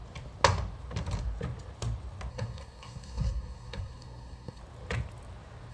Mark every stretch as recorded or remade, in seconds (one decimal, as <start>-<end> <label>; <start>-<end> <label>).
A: 0.0-2.3 recorded; 2.3-4.6 remade; 4.6-5.7 recorded